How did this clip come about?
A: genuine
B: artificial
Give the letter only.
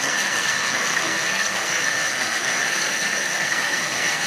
B